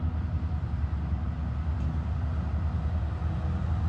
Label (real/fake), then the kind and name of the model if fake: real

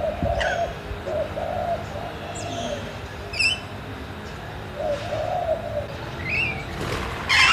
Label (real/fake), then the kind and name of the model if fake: real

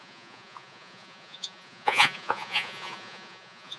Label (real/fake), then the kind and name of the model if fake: fake, vocoder, Vocos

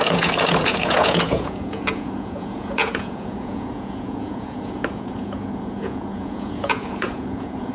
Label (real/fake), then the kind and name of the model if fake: fake, vocoder, Vocos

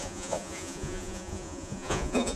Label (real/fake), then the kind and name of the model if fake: fake, vocoder, Vocos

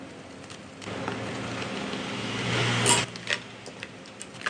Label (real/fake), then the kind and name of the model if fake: real